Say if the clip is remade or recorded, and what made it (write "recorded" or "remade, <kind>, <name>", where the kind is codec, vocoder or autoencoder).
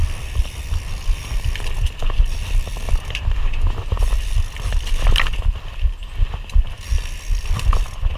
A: recorded